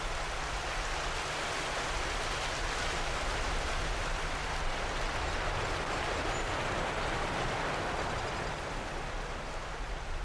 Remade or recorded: recorded